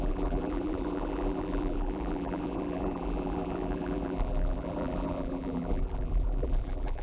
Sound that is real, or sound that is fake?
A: fake